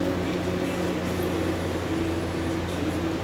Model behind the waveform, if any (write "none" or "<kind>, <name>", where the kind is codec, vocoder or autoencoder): none